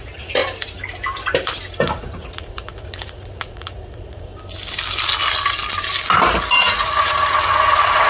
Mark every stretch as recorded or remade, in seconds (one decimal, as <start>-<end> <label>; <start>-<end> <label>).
0.0-0.4 remade; 0.4-1.9 recorded; 1.9-4.3 remade; 4.3-6.6 recorded; 6.6-8.1 remade